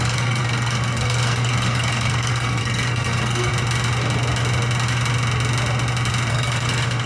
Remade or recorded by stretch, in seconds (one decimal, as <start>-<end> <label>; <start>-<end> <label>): 0.0-3.5 remade; 3.5-6.3 recorded; 6.3-7.1 remade